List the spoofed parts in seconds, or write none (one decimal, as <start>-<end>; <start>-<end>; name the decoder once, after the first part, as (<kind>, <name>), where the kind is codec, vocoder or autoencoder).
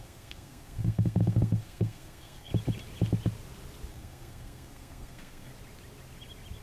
0.0-2.5 (codec, SNAC); 3.9-5.5